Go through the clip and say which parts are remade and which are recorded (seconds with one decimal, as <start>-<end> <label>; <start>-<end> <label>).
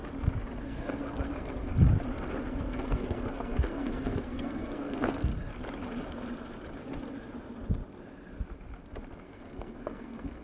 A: 0.0-0.6 recorded; 0.6-1.7 remade; 1.7-2.5 recorded; 2.5-5.3 remade; 5.3-9.2 recorded; 9.2-10.4 remade